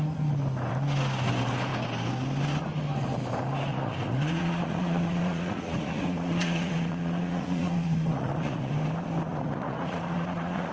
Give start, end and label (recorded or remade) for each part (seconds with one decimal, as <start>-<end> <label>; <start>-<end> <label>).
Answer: 0.0-3.7 recorded; 3.7-8.7 remade; 8.7-9.3 recorded; 9.3-10.7 remade